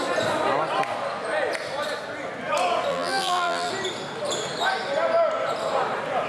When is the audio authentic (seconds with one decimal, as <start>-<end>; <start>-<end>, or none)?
0.0-2.9; 3.7-6.3